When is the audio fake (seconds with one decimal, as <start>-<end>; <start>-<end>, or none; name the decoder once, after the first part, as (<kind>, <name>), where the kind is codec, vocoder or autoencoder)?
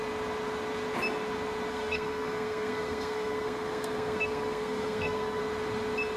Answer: 1.7-5.4 (codec, SNAC)